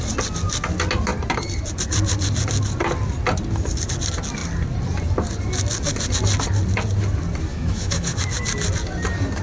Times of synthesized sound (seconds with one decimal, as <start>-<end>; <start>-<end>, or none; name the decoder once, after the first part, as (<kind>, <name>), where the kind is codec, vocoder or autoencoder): 7.5-8.2 (autoencoder, DAC-VAE)